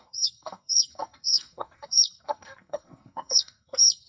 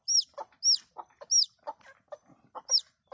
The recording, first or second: second